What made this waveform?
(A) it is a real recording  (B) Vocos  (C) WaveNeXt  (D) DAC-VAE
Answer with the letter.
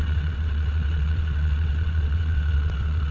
C